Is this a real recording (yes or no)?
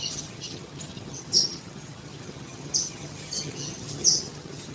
no